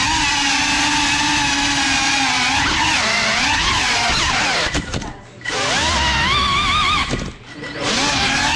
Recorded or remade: recorded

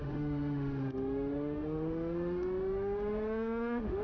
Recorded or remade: remade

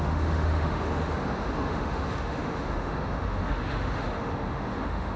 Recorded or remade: remade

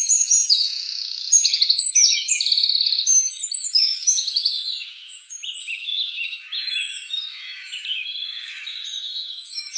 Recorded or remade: remade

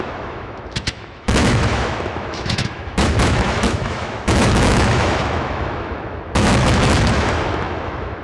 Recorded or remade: remade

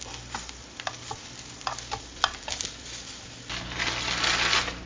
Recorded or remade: recorded